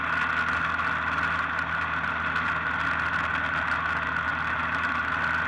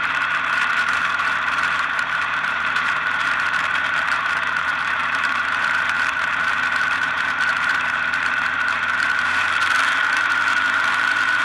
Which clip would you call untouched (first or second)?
first